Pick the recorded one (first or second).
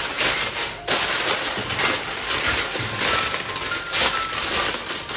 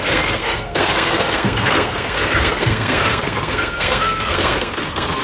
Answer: first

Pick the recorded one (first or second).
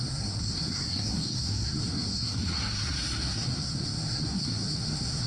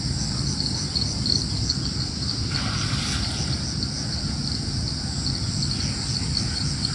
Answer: second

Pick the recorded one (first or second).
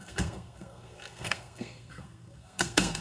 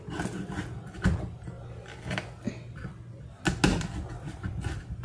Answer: second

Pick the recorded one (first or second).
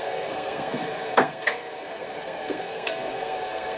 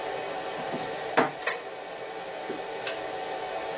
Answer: second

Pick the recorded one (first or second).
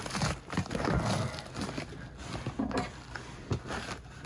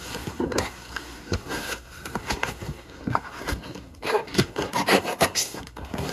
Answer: first